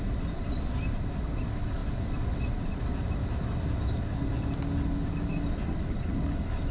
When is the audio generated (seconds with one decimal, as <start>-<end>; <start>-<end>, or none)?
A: none